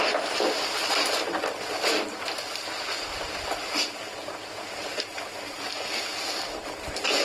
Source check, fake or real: real